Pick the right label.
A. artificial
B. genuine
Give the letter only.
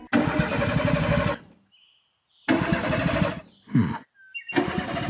B